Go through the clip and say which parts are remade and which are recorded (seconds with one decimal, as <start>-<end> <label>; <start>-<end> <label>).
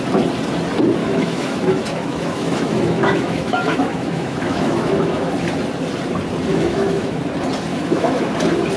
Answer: 0.0-1.0 recorded; 1.0-5.3 remade; 5.3-6.5 recorded; 6.5-7.2 remade; 7.2-7.7 recorded; 7.7-8.3 remade; 8.3-8.8 recorded